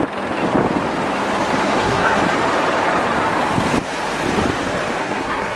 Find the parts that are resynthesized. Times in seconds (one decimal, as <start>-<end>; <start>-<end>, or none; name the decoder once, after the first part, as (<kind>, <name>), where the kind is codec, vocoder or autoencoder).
1.6-2.2 (codec, SNAC); 5.0-5.6

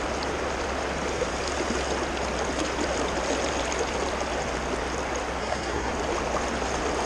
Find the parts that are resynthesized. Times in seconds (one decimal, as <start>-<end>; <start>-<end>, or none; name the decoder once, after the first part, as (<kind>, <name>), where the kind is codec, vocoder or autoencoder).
5.4-5.9 (codec, SNAC)